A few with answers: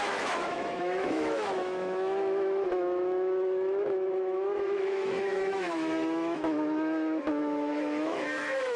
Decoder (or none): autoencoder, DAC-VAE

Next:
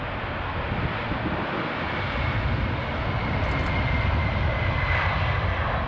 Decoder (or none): none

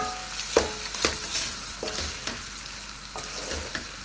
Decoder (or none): none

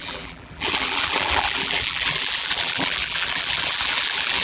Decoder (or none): vocoder, BigVGAN v2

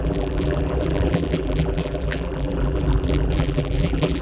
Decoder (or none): vocoder, BigVGAN v2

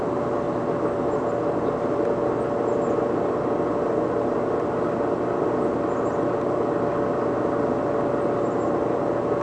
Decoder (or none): none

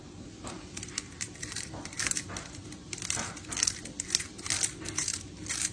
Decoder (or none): vocoder, BigVGAN v2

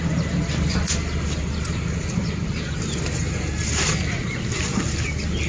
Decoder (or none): none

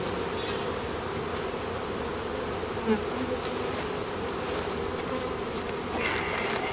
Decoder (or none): none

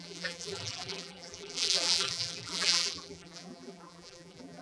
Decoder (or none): vocoder, BigVGAN v2